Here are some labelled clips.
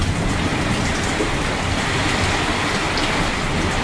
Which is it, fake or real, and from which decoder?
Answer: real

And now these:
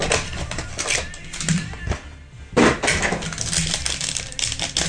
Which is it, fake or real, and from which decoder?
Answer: real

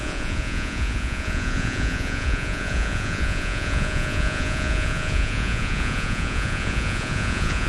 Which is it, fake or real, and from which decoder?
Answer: fake, vocoder, Vocos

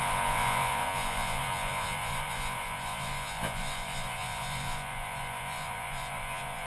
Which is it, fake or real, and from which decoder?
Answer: fake, vocoder, Vocos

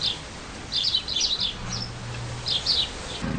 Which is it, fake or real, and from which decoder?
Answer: real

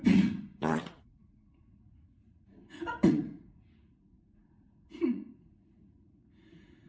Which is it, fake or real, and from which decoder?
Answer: fake, vocoder, Vocos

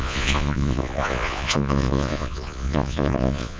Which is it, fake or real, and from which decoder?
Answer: fake, vocoder, Vocos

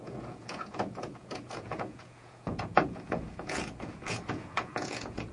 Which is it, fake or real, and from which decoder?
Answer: fake, vocoder, Vocos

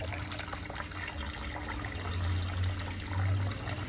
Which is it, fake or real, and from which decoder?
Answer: real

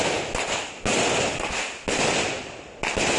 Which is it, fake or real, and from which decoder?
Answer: real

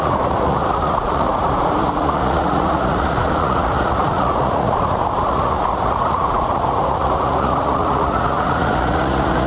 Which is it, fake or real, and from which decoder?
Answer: fake, vocoder, Vocos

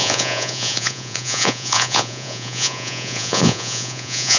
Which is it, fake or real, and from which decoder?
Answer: fake, vocoder, Vocos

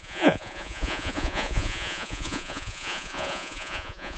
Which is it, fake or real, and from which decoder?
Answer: fake, vocoder, Vocos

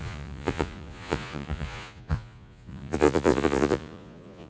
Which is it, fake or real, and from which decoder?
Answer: fake, vocoder, Vocos